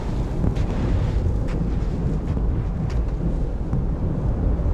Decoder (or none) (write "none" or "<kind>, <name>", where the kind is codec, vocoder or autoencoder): none